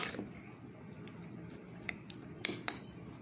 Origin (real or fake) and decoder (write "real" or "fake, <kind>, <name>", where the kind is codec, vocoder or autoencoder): real